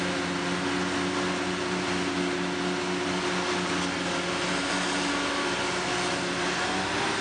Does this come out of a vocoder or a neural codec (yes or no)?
no